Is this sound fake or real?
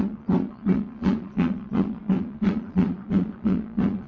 fake